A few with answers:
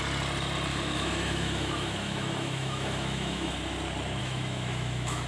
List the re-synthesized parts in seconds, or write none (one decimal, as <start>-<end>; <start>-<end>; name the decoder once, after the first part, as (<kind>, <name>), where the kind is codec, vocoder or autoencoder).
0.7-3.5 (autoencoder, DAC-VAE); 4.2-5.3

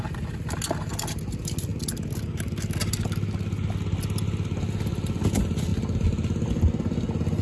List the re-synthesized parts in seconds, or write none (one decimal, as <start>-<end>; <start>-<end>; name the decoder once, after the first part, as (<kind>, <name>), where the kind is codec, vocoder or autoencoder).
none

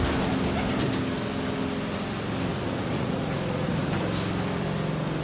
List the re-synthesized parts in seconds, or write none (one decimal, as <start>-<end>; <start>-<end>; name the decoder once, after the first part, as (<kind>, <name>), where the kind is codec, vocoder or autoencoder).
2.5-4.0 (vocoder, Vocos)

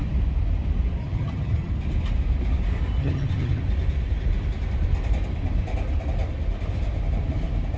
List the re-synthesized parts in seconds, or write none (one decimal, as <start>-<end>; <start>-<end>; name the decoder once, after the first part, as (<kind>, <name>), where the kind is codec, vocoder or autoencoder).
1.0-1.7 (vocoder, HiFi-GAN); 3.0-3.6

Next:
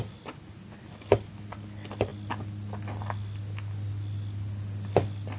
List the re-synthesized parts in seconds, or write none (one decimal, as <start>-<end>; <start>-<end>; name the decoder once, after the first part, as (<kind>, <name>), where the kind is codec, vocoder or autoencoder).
none

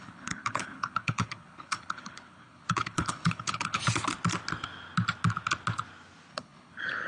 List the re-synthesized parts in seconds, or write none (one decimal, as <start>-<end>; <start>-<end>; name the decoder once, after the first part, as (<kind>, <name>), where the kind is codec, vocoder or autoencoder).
0.0-3.8 (codec, HILCodec); 6.3-7.1